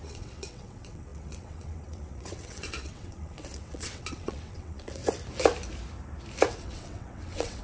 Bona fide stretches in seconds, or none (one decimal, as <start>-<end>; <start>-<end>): 5.0-6.6